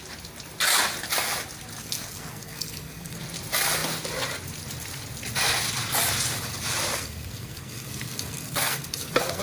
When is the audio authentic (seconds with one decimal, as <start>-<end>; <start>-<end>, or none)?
0.0-1.8; 3.2-6.9